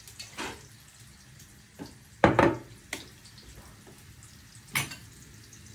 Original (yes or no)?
yes